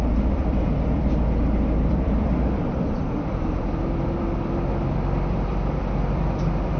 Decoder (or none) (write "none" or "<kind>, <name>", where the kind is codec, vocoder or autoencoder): vocoder, BigVGAN v2